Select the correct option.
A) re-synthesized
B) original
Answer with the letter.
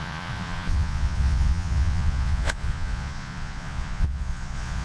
A